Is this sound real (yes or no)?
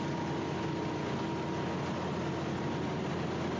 yes